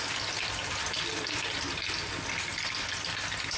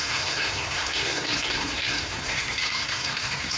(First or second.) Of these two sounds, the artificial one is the second